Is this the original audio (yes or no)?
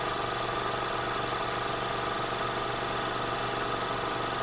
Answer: yes